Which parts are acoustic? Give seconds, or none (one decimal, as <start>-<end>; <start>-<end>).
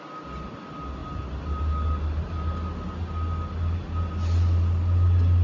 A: 0.0-5.4